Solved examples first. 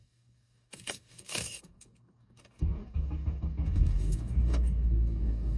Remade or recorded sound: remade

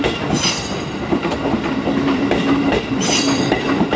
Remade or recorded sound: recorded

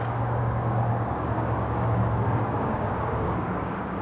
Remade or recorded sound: remade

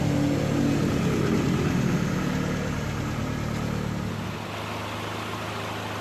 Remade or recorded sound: recorded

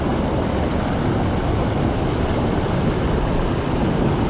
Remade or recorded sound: recorded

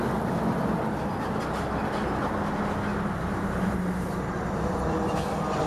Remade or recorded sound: recorded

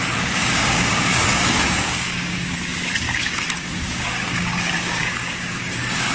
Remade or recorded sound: remade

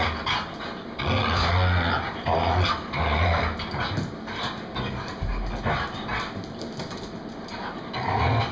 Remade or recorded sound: recorded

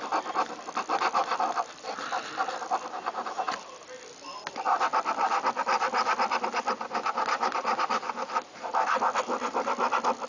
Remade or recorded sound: recorded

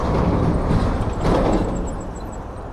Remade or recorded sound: recorded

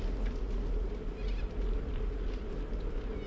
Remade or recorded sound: recorded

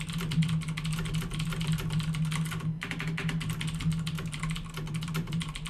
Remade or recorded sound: recorded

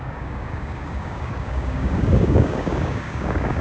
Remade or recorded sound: remade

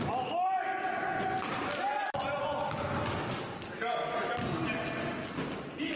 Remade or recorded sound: recorded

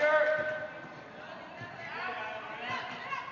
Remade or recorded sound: recorded